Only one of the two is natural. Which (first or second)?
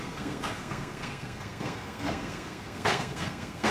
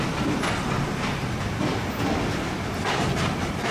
second